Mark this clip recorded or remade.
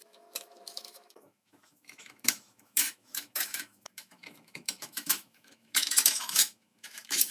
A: remade